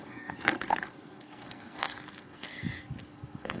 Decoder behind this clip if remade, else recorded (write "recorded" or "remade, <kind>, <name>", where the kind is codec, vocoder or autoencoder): remade, codec, SNAC